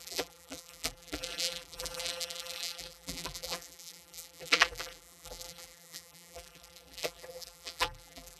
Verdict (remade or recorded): remade